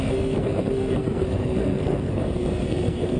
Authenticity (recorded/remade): remade